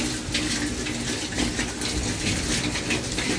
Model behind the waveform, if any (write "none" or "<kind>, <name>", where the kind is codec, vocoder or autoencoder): none